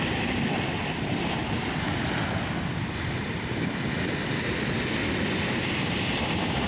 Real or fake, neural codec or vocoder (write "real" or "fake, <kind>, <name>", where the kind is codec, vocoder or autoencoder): real